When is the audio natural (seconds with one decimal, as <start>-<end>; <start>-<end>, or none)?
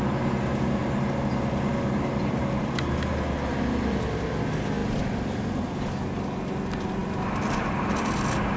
0.0-4.8; 5.6-8.6